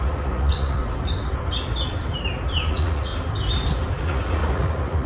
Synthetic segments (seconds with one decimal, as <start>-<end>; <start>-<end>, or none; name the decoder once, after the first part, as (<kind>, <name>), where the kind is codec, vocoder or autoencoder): 0.0-0.8 (vocoder, Vocos); 2.7-3.1; 3.9-5.1